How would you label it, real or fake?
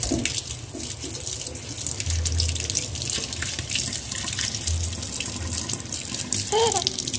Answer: real